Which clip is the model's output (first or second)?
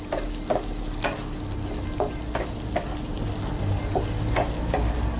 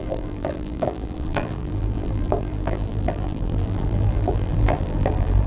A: second